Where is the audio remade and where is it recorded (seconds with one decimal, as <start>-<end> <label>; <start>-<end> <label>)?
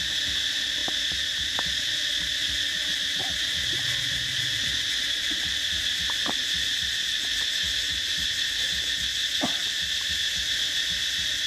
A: 0.0-11.5 recorded